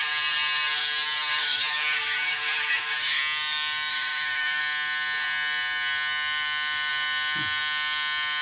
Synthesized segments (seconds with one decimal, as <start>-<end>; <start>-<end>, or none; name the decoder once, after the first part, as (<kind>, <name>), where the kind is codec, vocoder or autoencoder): 1.4-3.2 (autoencoder, DAC-VAE); 3.9-4.6